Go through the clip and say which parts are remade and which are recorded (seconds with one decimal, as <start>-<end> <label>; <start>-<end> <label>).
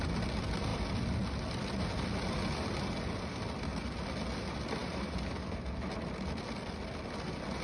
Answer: 0.0-4.8 recorded; 4.8-5.8 remade; 5.8-7.6 recorded